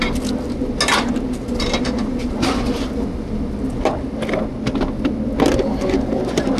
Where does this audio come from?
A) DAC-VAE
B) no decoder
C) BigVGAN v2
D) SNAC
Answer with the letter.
B